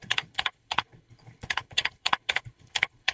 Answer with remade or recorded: remade